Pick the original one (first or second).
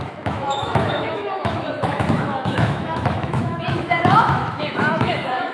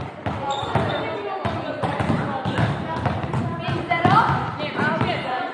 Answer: second